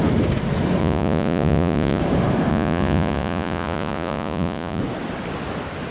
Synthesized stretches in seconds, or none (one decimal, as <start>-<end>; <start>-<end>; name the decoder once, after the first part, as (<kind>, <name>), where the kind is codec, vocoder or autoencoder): 0.8-2.0 (vocoder, Vocos); 2.5-4.8